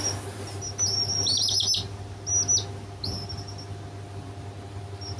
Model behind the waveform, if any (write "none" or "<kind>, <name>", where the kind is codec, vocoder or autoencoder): none